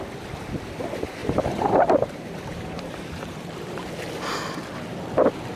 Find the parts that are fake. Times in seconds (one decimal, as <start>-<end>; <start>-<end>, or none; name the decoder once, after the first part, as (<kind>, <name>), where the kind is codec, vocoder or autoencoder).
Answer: 1.2-3.9 (vocoder, BigVGAN v2)

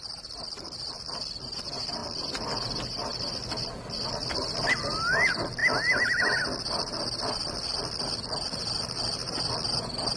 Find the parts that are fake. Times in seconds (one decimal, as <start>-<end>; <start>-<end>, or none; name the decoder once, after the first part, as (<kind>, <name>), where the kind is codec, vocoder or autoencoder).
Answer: none

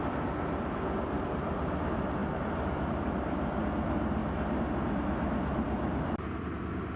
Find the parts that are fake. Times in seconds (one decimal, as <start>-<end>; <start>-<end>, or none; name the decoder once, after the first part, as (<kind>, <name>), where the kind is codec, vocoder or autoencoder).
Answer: 0.0-4.2 (vocoder, BigVGAN v2); 4.9-7.0

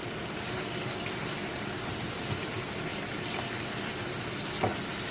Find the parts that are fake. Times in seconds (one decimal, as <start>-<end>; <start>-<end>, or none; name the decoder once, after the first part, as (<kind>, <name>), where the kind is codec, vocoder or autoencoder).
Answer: 0.0-0.5 (vocoder, BigVGAN v2)